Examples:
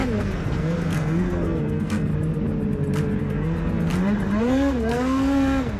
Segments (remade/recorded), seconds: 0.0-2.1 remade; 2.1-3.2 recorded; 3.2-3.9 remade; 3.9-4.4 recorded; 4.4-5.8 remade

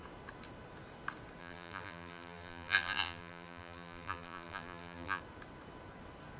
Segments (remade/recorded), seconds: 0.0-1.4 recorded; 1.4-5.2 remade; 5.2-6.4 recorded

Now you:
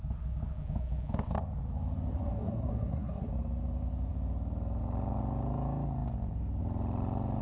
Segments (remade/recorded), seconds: 0.0-2.1 recorded; 2.1-3.3 remade; 3.3-7.4 recorded

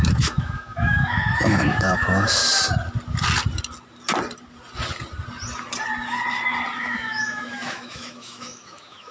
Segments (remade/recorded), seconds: 0.0-2.4 remade; 2.4-6.8 recorded; 6.8-9.1 remade

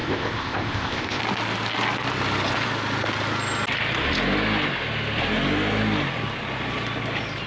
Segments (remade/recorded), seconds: 0.0-1.2 remade; 1.2-7.5 recorded

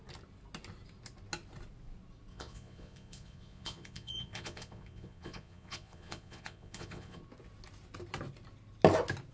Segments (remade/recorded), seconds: 0.0-2.3 recorded; 2.3-7.2 remade; 7.2-9.3 recorded

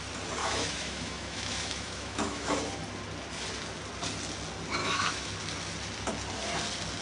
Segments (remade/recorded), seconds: 0.0-0.4 recorded; 0.4-2.5 remade; 2.5-4.8 recorded; 4.8-5.3 remade; 5.3-7.0 recorded